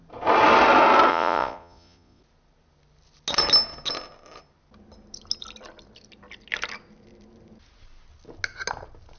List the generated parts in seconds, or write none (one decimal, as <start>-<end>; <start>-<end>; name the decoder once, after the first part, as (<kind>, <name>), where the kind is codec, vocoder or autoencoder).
1.1-2.2 (vocoder, Vocos)